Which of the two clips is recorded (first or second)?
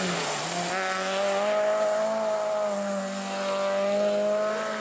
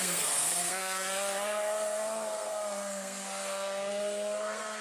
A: first